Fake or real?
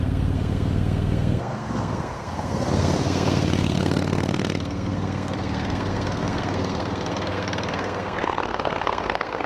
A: fake